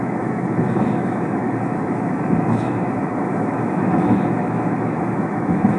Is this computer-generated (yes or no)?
yes